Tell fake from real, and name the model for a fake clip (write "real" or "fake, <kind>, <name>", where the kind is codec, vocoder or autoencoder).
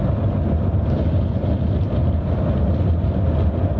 real